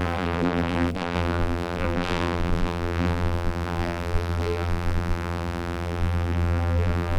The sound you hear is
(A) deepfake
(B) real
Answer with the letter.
A